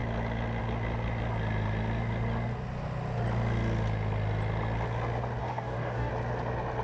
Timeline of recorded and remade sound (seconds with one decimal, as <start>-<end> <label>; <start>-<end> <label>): 0.0-5.4 recorded; 5.4-6.1 remade; 6.1-6.8 recorded